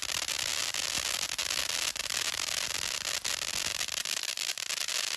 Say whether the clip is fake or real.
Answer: real